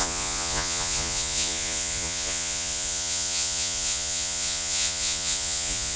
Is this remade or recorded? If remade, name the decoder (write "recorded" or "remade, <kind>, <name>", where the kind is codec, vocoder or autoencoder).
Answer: remade, vocoder, Vocos